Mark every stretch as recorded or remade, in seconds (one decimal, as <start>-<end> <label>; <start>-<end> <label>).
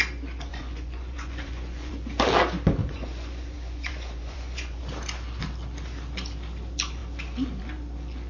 0.0-0.5 recorded; 0.5-1.9 remade; 1.9-2.8 recorded; 2.8-4.8 remade; 4.8-8.3 recorded